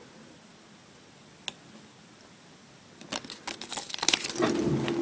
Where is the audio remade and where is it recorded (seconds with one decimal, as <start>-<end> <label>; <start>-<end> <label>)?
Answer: 0.0-5.0 recorded